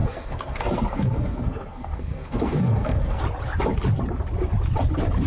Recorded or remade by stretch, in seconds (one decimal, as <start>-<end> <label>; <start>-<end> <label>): 0.0-3.2 remade; 3.2-5.3 recorded